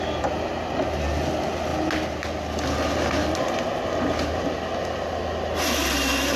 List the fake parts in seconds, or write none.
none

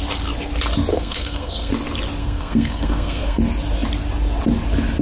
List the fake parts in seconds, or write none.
0.9-1.7 (codec, SNAC); 2.2-3.4